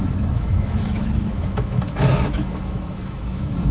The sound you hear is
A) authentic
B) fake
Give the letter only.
B